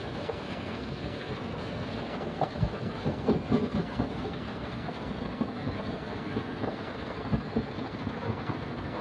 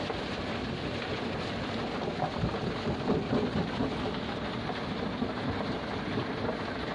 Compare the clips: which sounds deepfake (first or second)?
first